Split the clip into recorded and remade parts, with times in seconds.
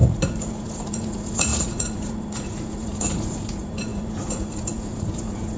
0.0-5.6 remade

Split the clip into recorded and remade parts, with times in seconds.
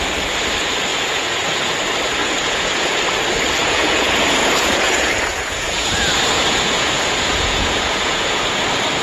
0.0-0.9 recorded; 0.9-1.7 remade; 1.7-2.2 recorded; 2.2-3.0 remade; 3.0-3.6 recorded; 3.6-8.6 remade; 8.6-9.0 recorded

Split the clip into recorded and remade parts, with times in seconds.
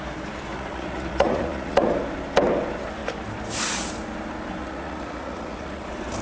0.0-0.5 recorded; 0.5-1.9 remade; 1.9-4.6 recorded; 4.6-5.8 remade; 5.8-6.2 recorded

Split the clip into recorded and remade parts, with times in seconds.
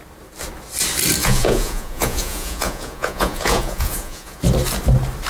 0.0-1.2 recorded; 1.2-4.4 remade; 4.4-5.3 recorded